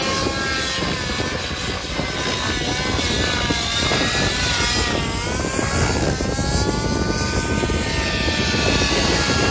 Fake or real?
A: real